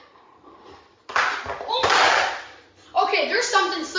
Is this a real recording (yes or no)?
yes